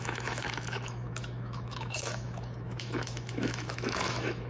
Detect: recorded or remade remade